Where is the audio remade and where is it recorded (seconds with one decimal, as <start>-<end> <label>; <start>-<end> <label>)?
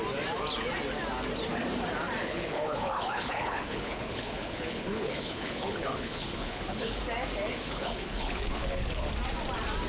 0.0-2.2 recorded; 2.2-7.0 remade; 7.0-7.5 recorded; 7.5-9.1 remade; 9.1-9.9 recorded